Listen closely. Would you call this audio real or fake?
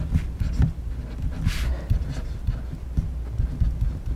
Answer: real